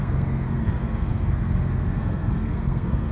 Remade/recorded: remade